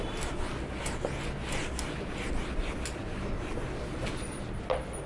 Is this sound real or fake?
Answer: real